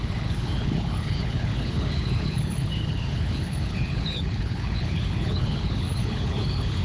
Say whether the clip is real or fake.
fake